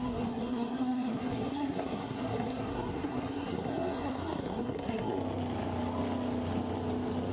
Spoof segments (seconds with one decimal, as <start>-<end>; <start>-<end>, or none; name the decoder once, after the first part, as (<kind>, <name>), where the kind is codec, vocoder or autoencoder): 0.0-5.2 (codec, SNAC)